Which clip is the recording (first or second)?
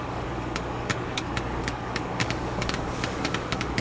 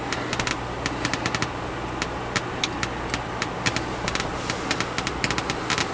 second